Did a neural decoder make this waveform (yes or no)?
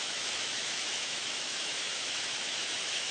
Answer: yes